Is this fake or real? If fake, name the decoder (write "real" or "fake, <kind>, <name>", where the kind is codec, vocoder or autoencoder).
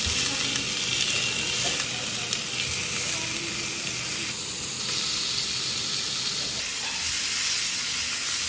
real